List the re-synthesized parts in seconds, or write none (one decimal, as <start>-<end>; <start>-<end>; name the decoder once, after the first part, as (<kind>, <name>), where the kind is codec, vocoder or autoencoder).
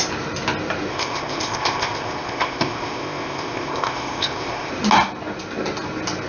0.9-4.7 (codec, ZipCodec)